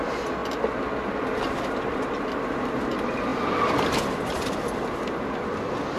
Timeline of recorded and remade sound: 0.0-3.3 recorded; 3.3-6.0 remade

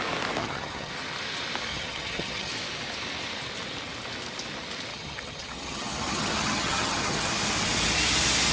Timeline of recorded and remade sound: 0.0-0.4 recorded; 0.4-0.9 remade; 0.9-1.7 recorded; 1.7-2.5 remade; 2.5-4.9 recorded; 4.9-7.3 remade; 7.3-8.5 recorded

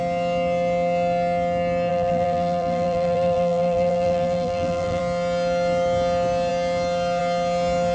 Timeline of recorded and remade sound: 0.0-1.9 recorded; 1.9-5.0 remade; 5.0-7.9 recorded

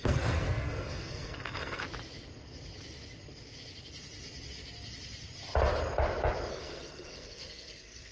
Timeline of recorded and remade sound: 0.0-1.8 remade; 1.8-6.5 recorded; 6.5-8.1 remade

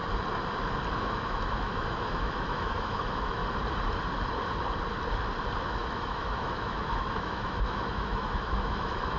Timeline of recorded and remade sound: 0.0-1.0 recorded; 1.0-3.4 remade; 3.4-5.6 recorded; 5.6-9.2 remade

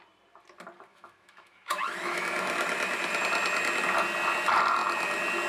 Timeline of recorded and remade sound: 0.0-0.9 recorded; 0.9-2.2 remade; 2.2-5.5 recorded

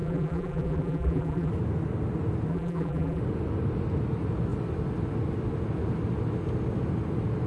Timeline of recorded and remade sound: 0.0-1.5 remade; 1.5-2.5 recorded; 2.5-3.2 remade; 3.2-7.5 recorded